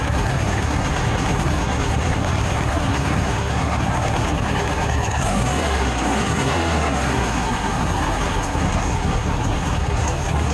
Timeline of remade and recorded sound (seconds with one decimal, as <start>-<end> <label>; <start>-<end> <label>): 0.0-10.5 remade